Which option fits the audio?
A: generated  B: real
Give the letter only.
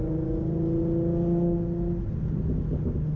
B